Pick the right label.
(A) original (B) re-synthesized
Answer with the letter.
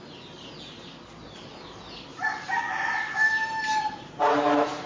A